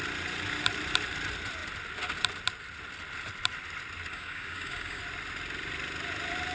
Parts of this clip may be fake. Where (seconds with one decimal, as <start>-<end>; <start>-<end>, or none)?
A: 4.1-5.0